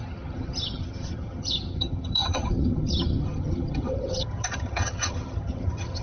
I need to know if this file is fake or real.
fake